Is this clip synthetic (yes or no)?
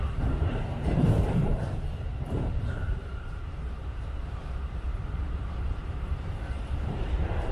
yes